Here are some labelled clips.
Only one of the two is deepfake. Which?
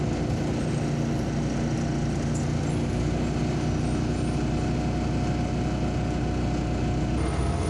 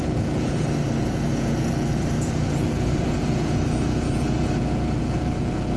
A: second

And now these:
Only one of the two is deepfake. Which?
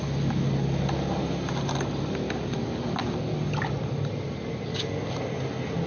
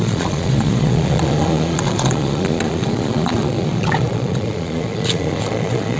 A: second